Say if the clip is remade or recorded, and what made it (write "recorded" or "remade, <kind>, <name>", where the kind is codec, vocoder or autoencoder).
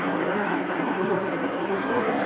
remade, codec, SNAC